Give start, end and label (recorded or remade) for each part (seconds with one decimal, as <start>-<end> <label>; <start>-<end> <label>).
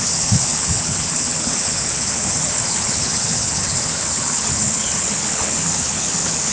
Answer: 0.0-6.5 remade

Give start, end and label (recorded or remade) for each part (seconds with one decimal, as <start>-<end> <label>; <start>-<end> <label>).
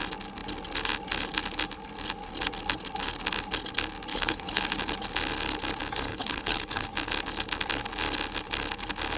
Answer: 0.0-4.1 recorded; 4.1-4.6 remade; 4.6-6.1 recorded; 6.1-6.9 remade; 6.9-9.2 recorded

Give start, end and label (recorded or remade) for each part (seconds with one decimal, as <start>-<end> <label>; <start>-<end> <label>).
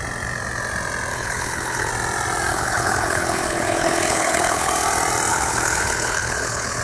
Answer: 0.0-1.1 recorded; 1.1-1.9 remade; 1.9-2.5 recorded; 2.5-4.7 remade; 4.7-5.3 recorded; 5.3-6.8 remade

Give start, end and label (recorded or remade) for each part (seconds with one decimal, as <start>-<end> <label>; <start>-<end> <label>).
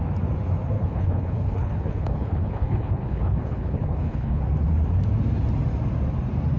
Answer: 0.0-0.8 recorded; 0.8-4.4 remade; 4.4-6.6 recorded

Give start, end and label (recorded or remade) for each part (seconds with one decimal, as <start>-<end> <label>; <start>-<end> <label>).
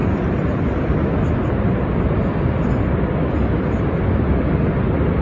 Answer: 0.0-5.2 recorded